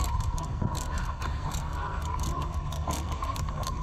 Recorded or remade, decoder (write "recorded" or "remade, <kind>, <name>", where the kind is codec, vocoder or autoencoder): remade, codec, SNAC